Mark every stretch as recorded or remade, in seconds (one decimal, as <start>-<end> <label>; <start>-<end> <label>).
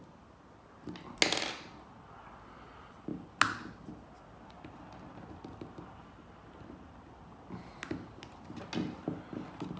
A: 0.0-9.8 recorded